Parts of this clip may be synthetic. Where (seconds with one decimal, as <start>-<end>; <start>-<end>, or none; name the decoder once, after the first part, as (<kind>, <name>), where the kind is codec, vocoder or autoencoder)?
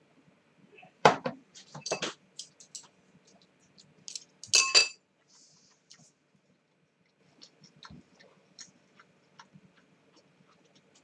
0.8-2.0 (vocoder, BigVGAN v2)